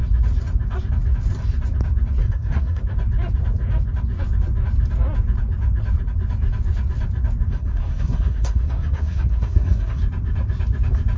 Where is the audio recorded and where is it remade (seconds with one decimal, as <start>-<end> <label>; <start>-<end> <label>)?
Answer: 0.0-2.2 recorded; 2.2-2.8 remade; 2.8-7.5 recorded; 7.5-10.0 remade; 10.0-11.2 recorded